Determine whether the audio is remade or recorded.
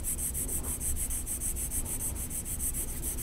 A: recorded